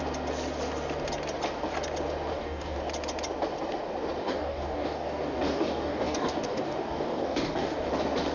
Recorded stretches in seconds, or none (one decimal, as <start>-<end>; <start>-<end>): 0.0-2.3; 2.8-4.2; 7.9-8.3